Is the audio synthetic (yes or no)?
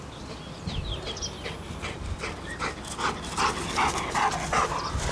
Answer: no